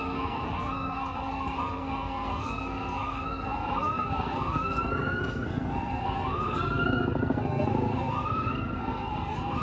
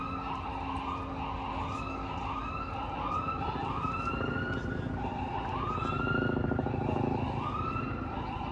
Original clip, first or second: second